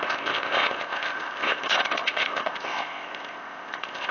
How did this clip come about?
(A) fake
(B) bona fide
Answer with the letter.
A